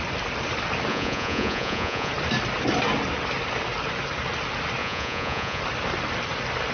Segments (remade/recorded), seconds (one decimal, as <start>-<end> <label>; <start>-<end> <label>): 0.0-0.9 recorded; 0.9-2.1 remade; 2.1-4.8 recorded; 4.8-5.6 remade; 5.6-6.7 recorded